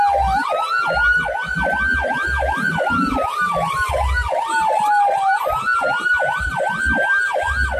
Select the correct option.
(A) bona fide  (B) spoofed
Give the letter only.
A